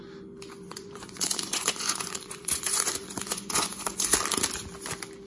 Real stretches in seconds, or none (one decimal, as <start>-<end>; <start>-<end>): 0.0-0.7; 4.1-5.3